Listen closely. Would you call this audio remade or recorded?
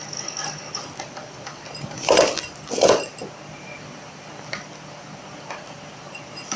recorded